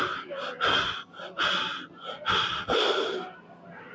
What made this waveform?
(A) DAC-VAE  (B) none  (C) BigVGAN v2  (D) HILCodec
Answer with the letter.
B